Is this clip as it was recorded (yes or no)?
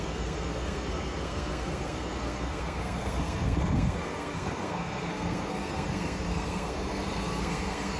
no